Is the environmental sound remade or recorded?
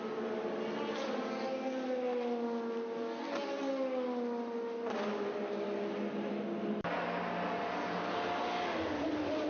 recorded